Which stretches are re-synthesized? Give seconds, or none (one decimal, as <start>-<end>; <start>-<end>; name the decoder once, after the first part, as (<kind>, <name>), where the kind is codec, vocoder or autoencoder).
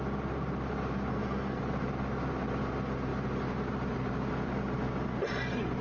1.1-1.6 (codec, SNAC)